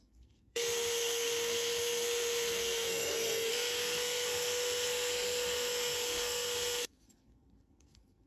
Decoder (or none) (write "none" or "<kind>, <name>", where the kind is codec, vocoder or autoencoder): codec, SNAC